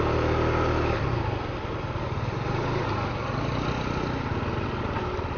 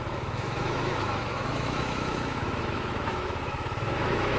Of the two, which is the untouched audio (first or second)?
first